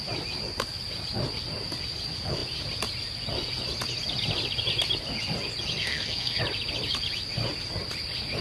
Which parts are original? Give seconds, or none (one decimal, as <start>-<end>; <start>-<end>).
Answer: 0.0-5.8; 6.4-8.4